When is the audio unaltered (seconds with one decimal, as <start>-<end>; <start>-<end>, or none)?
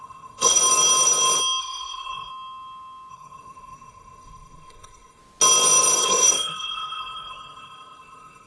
0.6-1.6; 2.3-3.1; 5.2-6.0